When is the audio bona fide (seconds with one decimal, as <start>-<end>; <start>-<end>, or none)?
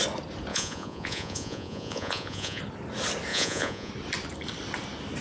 0.0-0.5; 2.6-3.3; 3.9-5.2